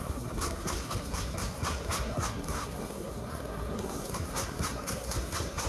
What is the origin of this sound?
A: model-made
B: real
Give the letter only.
A